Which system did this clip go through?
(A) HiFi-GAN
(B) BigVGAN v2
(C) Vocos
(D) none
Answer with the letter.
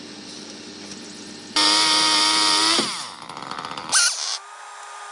D